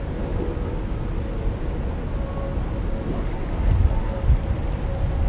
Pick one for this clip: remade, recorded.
recorded